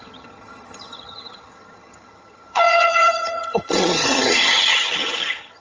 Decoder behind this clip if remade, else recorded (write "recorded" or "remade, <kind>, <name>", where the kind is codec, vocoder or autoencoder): remade, vocoder, HiFi-GAN